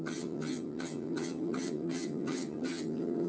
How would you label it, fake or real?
fake